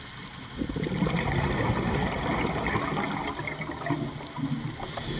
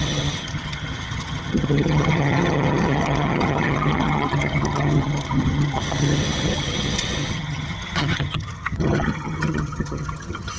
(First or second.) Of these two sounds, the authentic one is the first